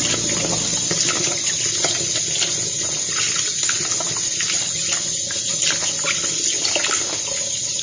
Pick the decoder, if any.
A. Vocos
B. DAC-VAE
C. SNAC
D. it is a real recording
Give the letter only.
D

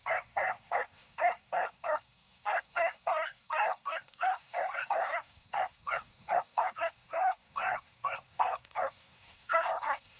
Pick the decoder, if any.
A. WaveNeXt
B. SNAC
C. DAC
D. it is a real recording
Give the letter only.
B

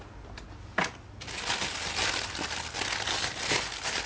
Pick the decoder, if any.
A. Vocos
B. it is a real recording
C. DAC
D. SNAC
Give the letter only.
B